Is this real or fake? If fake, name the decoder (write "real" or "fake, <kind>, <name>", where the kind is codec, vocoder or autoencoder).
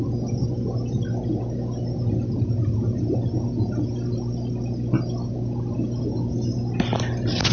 real